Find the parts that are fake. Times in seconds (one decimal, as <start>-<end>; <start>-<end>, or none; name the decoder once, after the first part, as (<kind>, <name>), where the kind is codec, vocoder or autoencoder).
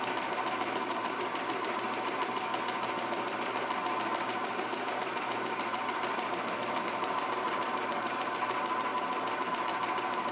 0.0-2.5 (vocoder, BigVGAN v2); 6.8-8.9; 9.5-10.3